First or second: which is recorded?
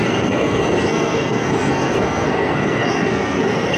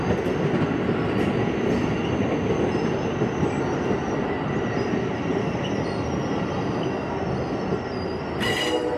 second